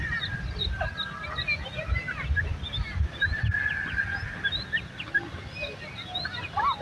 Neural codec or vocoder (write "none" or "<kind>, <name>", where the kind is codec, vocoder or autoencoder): none